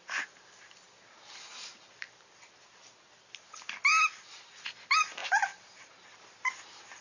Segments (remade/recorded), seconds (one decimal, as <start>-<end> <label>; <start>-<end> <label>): 0.0-5.2 recorded; 5.2-5.9 remade; 5.9-7.0 recorded